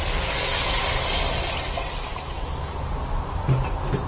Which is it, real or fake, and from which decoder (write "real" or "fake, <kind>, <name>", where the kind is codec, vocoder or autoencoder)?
real